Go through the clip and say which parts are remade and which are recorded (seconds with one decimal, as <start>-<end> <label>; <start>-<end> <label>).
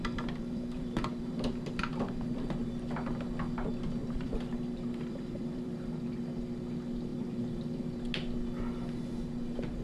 0.0-2.7 remade; 2.7-4.0 recorded; 4.0-6.1 remade; 6.1-7.1 recorded; 7.1-7.8 remade; 7.8-9.8 recorded